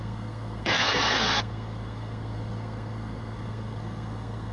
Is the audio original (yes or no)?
no